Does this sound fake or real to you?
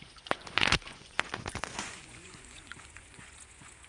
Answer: fake